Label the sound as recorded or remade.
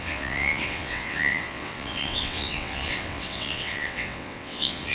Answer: remade